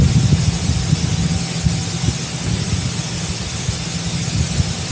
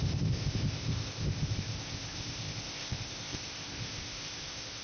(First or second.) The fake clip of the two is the second